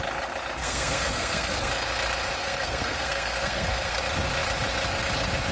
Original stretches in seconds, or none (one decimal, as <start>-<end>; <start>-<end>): 0.0-0.6; 1.7-2.4; 4.0-5.5